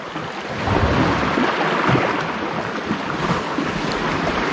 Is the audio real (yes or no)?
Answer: yes